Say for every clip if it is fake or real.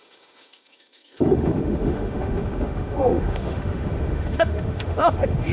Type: fake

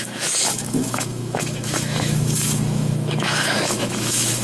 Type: fake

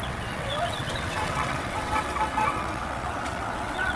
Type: fake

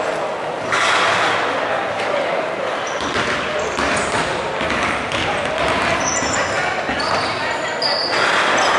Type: real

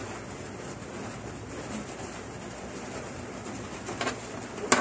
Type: real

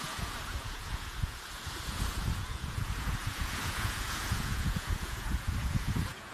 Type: fake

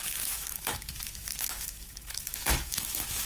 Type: fake